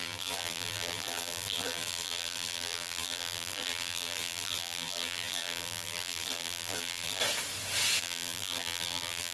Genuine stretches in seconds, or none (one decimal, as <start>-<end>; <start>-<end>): 7.2-8.0